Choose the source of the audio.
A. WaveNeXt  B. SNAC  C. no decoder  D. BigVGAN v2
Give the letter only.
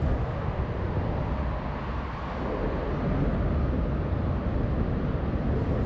C